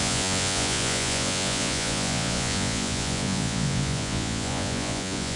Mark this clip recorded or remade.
remade